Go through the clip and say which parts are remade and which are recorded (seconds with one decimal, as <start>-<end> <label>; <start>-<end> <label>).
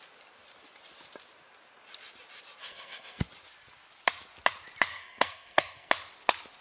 0.0-2.6 recorded; 2.6-3.2 remade; 3.2-4.9 recorded; 4.9-5.9 remade; 5.9-6.6 recorded